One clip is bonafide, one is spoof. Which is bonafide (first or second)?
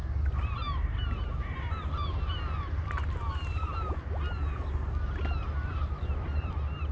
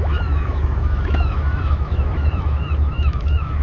first